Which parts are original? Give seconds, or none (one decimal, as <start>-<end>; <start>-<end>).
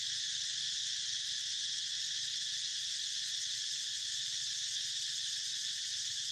0.0-6.3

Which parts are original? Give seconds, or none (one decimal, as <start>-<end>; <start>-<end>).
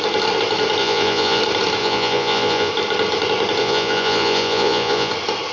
0.0-0.8; 1.4-1.8; 2.7-3.6; 5.1-5.5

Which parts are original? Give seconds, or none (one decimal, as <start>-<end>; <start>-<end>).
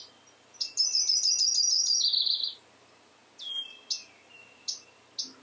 0.0-5.4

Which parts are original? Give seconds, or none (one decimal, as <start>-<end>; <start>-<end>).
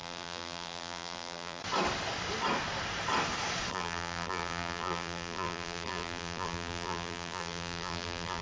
1.6-3.7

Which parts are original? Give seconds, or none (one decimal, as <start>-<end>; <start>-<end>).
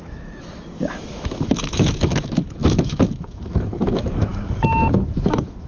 none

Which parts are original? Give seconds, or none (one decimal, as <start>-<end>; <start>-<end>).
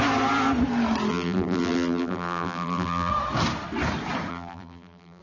0.0-1.1; 3.1-4.3